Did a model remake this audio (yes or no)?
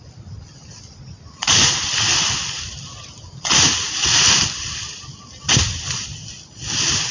no